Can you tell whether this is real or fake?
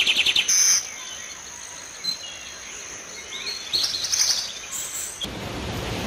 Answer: real